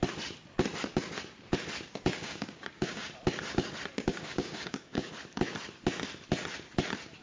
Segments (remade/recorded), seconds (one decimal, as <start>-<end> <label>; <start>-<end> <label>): 0.0-2.1 recorded; 2.1-3.1 remade; 3.1-4.1 recorded; 4.1-5.1 remade; 5.1-7.2 recorded